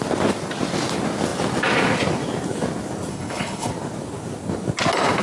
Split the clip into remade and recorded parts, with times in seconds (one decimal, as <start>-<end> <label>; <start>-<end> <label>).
0.0-3.1 recorded; 3.1-3.7 remade; 3.7-5.2 recorded